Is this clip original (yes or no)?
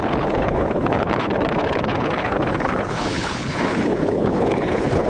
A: no